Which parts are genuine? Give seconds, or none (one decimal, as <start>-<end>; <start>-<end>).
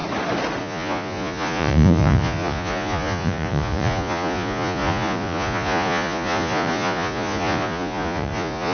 0.0-0.6